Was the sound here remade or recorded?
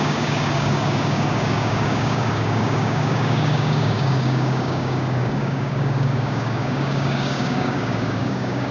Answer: remade